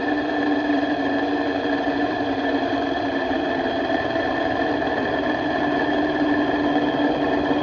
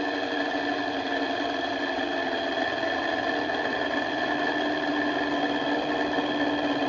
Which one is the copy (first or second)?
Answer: first